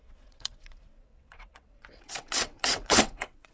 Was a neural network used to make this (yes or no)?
yes